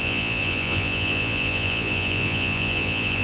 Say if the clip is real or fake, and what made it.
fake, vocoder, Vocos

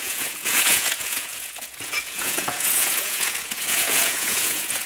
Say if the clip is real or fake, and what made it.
fake, vocoder, Vocos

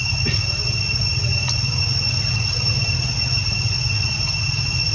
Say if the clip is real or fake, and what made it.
real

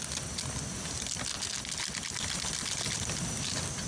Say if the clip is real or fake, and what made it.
real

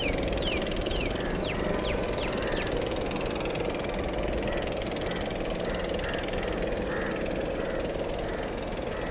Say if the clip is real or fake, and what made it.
real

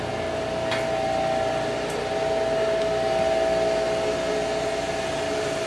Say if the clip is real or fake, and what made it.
real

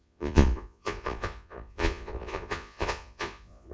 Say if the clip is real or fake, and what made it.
fake, vocoder, Vocos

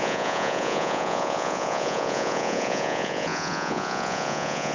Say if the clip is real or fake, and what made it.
fake, vocoder, Vocos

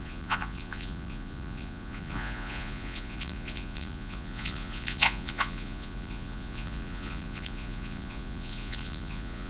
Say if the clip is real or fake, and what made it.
fake, vocoder, Vocos